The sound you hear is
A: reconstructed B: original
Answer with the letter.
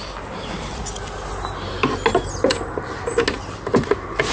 B